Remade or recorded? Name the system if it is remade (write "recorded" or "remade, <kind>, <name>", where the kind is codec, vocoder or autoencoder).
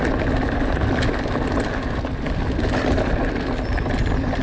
recorded